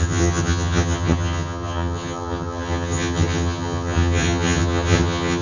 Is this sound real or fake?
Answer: fake